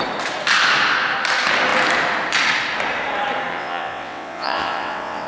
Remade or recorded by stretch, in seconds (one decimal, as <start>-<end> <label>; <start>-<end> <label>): 0.0-3.5 recorded; 3.5-5.3 remade